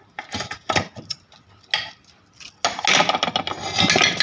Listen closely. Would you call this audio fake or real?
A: real